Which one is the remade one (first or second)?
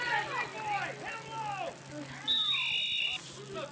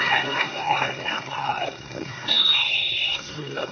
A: second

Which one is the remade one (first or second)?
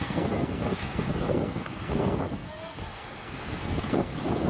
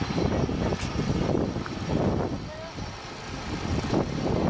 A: first